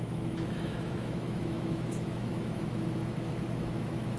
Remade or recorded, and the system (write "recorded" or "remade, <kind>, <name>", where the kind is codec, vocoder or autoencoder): remade, autoencoder, DAC-VAE